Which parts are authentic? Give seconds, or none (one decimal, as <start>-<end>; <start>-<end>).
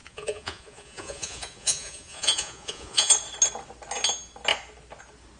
3.1-5.4